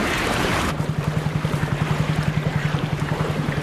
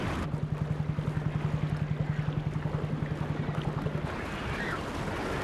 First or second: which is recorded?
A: second